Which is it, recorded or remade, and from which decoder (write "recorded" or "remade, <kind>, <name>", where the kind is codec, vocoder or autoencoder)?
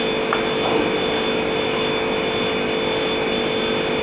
recorded